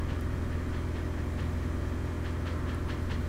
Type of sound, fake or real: real